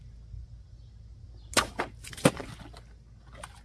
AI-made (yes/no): no